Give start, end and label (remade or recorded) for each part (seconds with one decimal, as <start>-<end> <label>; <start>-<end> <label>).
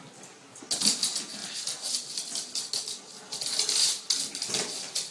0.0-5.1 recorded